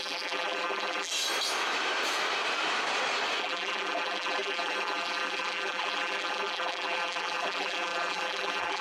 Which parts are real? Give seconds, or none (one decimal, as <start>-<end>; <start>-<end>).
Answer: 1.1-3.4